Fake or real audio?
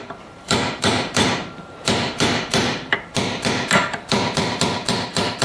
fake